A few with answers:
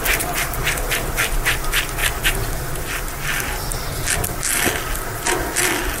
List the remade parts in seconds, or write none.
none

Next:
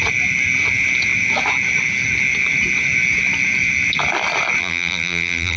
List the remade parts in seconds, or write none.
4.6-5.6 (vocoder, BigVGAN v2)

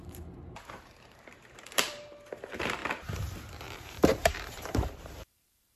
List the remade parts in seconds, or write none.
0.0-2.8 (vocoder, BigVGAN v2); 3.5-5.8

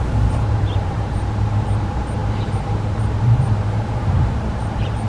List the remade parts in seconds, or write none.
0.0-5.1 (vocoder, BigVGAN v2)

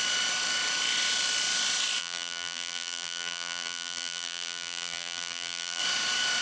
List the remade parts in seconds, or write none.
2.0-5.8 (vocoder, BigVGAN v2)